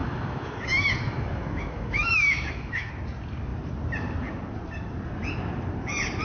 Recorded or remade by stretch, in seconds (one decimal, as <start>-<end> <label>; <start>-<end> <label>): 0.0-2.9 remade; 2.9-6.2 recorded